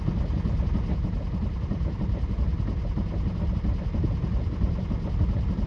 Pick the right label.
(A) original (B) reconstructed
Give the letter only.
A